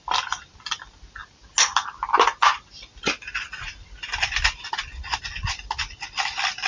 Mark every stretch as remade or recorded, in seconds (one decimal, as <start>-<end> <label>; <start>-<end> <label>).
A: 0.0-6.7 recorded